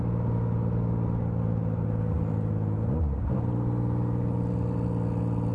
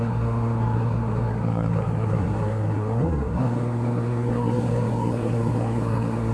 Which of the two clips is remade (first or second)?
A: second